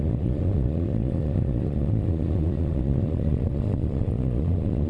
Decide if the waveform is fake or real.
fake